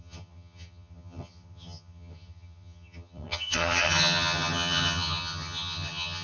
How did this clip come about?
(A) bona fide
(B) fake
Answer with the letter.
B